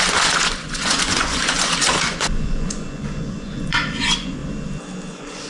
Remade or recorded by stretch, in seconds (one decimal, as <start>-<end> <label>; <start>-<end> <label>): 0.0-4.4 remade; 4.4-5.1 recorded; 5.1-5.5 remade